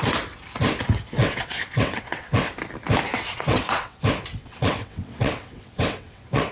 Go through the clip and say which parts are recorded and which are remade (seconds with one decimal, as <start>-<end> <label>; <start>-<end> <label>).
0.0-1.2 recorded; 1.2-2.5 remade; 2.5-3.1 recorded; 3.1-4.0 remade; 4.0-4.4 recorded; 4.4-6.5 remade